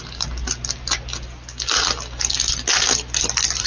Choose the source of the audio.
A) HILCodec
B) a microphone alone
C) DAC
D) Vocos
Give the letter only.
B